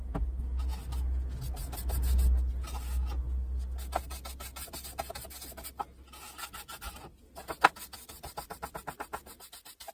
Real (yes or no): yes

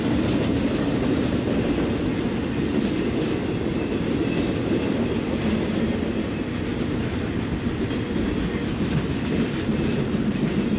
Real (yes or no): yes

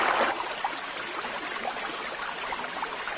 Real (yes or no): yes